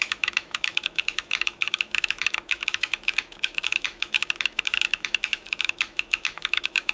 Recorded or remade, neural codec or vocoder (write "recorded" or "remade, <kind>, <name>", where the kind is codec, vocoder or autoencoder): remade, autoencoder, DAC-VAE